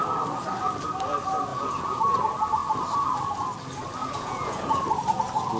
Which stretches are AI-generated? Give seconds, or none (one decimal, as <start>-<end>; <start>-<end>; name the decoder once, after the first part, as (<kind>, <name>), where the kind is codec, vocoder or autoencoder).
1.5-2.0 (vocoder, Vocos); 4.0-4.8